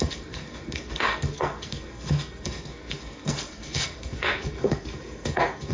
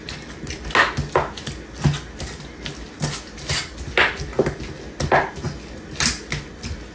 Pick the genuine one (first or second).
second